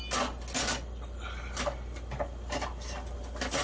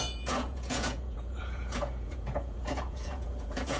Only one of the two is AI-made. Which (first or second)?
second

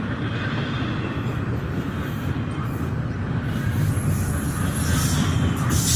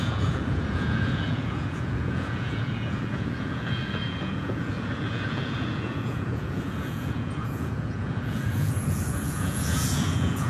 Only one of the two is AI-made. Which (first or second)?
second